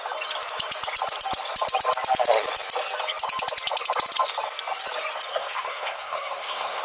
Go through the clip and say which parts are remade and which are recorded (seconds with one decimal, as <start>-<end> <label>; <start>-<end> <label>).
0.0-5.3 recorded; 5.3-6.8 remade